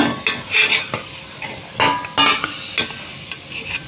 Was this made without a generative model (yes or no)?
yes